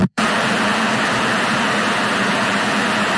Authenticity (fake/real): fake